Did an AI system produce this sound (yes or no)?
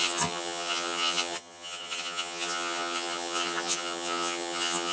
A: yes